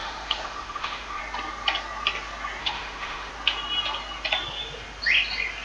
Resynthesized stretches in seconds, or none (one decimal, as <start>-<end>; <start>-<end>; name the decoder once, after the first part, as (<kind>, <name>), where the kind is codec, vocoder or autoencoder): 0.0-1.2 (autoencoder, DAC-VAE); 2.6-3.3